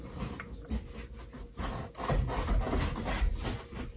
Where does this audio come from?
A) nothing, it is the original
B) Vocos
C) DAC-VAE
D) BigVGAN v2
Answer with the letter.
A